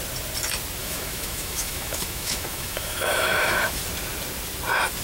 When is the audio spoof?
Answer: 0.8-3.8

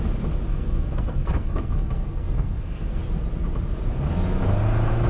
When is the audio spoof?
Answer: 0.5-3.0